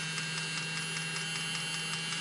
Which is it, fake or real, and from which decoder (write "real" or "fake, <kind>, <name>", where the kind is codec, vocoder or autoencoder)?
real